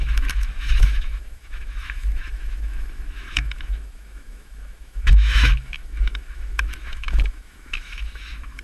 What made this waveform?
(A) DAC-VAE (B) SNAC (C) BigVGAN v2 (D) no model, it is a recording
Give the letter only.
A